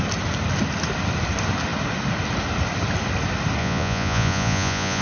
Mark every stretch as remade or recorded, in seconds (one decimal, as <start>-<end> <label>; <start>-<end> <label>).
0.0-3.6 recorded; 3.6-5.0 remade